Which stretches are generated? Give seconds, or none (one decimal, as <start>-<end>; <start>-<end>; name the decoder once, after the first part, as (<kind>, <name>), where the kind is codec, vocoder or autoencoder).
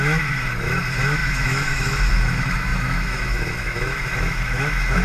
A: 0.0-5.0 (autoencoder, DAC-VAE)